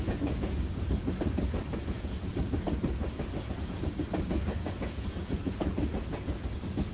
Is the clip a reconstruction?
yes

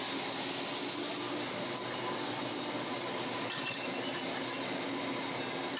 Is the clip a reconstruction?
no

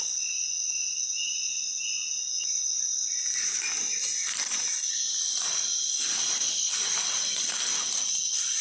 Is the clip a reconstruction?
no